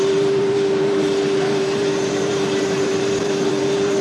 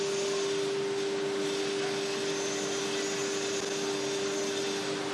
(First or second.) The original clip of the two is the second